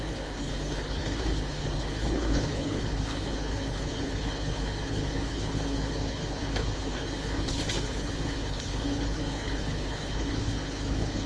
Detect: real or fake fake